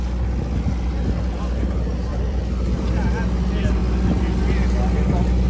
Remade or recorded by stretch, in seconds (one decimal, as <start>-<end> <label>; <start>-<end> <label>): 0.0-2.1 recorded; 2.1-2.9 remade; 2.9-5.5 recorded